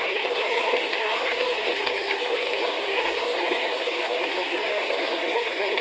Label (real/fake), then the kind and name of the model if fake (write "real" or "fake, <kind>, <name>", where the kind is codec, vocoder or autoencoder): fake, codec, SNAC